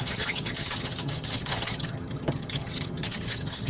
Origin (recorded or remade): remade